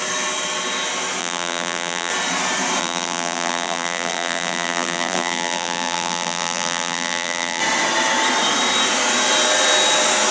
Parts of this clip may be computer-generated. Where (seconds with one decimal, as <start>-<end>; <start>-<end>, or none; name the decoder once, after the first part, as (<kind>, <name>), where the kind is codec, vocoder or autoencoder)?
1.2-2.1 (vocoder, BigVGAN v2); 2.8-7.6

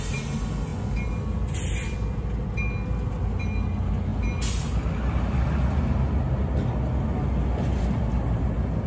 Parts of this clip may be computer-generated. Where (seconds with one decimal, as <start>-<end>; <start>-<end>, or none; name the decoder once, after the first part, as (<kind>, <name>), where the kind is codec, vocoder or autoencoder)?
none